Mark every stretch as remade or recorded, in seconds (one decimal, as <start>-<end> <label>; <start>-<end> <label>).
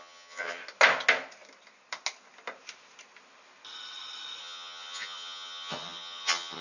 0.0-0.6 remade; 0.6-4.4 recorded; 4.4-6.6 remade